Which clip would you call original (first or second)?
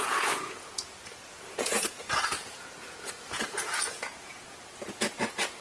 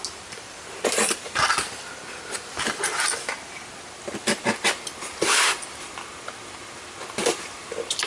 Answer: second